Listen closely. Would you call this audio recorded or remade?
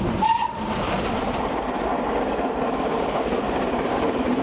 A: recorded